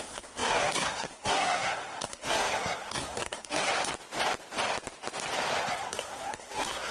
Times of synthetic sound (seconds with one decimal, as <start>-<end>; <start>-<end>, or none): 0.0-3.7; 5.7-6.9